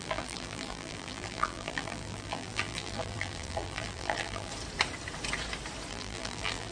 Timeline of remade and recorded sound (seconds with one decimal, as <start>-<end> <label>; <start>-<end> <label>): 0.0-4.5 remade; 4.5-5.9 recorded; 5.9-6.7 remade